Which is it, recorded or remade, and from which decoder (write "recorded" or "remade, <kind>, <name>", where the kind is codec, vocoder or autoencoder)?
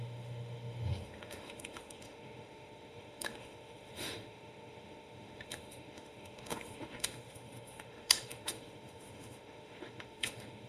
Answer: remade, autoencoder, DAC-VAE